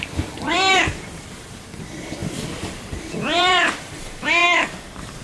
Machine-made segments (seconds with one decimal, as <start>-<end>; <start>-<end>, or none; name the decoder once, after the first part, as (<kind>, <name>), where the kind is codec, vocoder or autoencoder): 0.0-5.2 (vocoder, BigVGAN v2)